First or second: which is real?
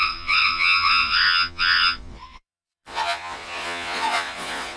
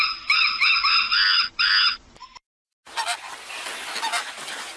second